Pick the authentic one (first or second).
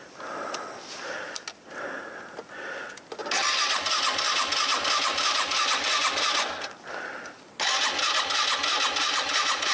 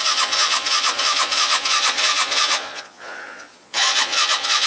first